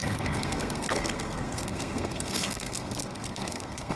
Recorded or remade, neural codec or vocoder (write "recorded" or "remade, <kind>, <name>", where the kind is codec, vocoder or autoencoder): remade, codec, SNAC